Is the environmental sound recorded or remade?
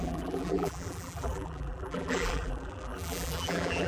remade